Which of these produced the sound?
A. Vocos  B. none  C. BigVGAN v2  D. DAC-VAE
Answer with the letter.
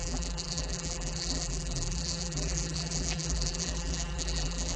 C